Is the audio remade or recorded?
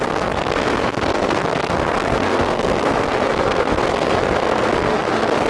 remade